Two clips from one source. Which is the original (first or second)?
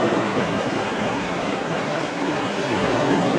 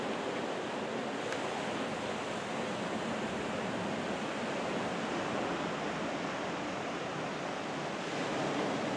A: second